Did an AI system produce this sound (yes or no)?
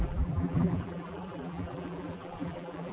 yes